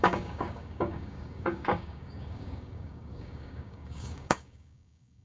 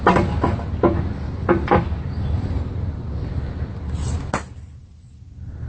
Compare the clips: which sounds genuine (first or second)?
second